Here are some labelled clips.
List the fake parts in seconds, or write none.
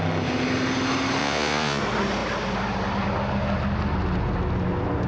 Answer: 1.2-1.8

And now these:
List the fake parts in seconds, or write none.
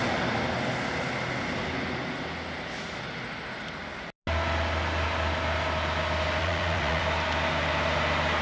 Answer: 6.4-7.0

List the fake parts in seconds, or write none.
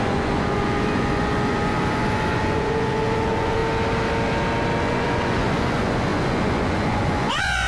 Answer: 0.0-3.6; 4.8-7.7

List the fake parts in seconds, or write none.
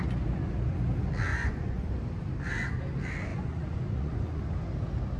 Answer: 1.3-1.9; 3.3-4.4